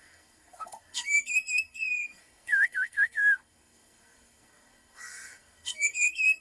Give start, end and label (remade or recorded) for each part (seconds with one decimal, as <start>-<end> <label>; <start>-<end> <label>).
0.0-6.4 remade